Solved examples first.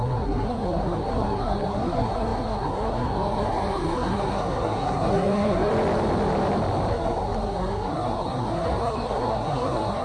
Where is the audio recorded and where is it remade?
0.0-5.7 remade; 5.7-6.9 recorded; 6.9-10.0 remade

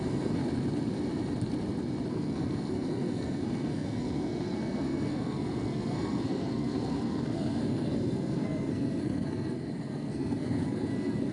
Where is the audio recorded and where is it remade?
0.0-0.4 remade; 0.4-2.1 recorded; 2.1-11.3 remade

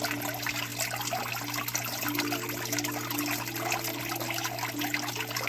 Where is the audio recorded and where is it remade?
0.0-5.5 recorded

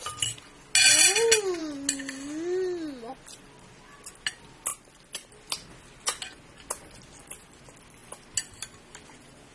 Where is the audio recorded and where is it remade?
0.0-9.5 recorded